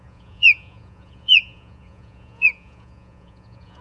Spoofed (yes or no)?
yes